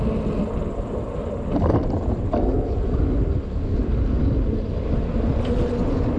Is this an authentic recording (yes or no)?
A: yes